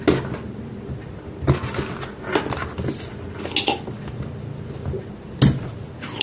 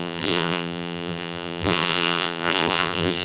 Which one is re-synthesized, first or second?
second